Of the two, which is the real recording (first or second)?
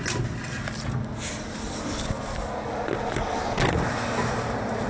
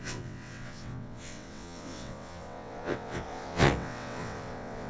first